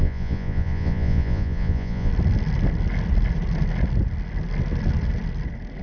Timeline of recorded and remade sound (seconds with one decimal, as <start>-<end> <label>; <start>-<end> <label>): 0.0-2.1 remade; 2.1-5.8 recorded